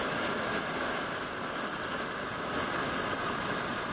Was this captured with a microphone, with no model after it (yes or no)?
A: yes